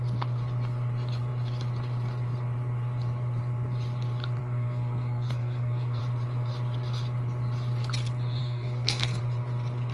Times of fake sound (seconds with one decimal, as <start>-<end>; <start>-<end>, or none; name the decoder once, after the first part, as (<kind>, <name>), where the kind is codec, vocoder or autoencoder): 4.4-6.0 (codec, SNAC); 8.4-9.2